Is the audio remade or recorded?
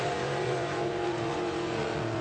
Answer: remade